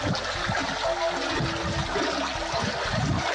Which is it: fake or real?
real